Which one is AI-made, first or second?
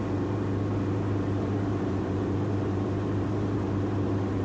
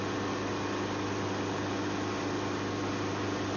first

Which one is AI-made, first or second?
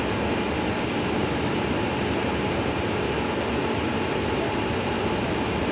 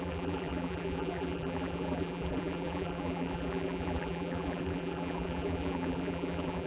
second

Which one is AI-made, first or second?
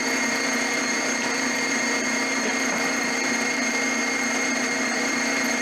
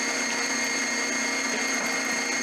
first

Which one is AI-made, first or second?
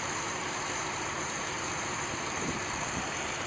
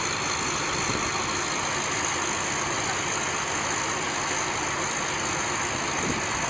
first